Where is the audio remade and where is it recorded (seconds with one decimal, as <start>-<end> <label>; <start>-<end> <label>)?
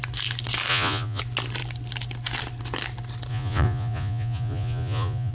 0.0-0.7 recorded; 0.7-1.2 remade; 1.2-3.3 recorded; 3.3-5.3 remade